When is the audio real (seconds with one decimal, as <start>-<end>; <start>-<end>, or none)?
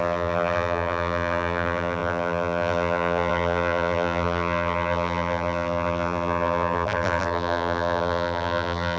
none